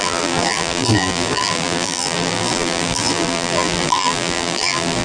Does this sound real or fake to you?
fake